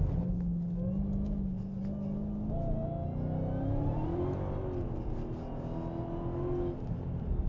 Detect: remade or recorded recorded